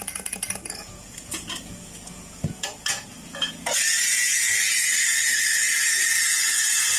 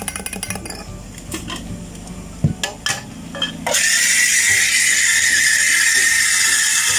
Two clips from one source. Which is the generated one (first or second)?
first